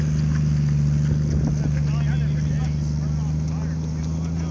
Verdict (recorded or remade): recorded